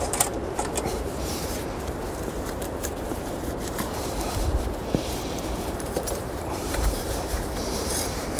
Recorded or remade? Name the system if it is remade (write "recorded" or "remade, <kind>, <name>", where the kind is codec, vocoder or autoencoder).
remade, vocoder, BigVGAN v2